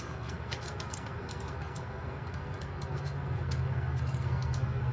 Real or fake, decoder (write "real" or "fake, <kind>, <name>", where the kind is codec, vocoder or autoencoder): fake, codec, SNAC